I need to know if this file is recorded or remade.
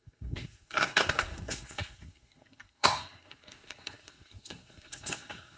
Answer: remade